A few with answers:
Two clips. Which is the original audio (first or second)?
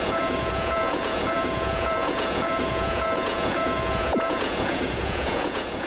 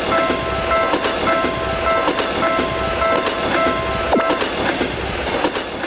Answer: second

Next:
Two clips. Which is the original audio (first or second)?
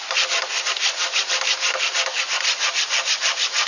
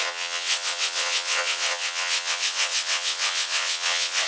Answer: first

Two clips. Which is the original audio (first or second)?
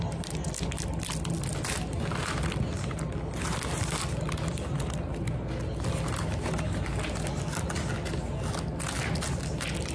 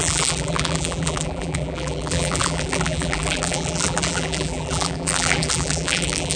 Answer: first